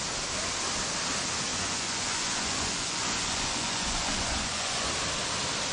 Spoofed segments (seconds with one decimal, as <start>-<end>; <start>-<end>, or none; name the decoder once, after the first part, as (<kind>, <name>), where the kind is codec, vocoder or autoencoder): 1.5-4.9 (vocoder, Vocos)